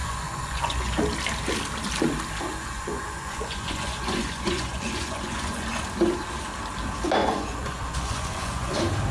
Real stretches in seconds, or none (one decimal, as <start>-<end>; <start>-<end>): 1.0-2.5; 5.8-7.2; 8.7-9.1